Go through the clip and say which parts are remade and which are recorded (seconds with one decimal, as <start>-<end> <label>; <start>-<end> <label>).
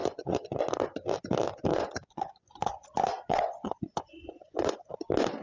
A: 0.0-0.6 remade; 0.6-1.7 recorded; 1.7-4.9 remade; 4.9-5.4 recorded